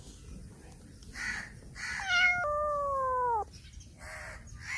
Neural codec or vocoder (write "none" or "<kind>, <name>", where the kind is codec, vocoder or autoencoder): none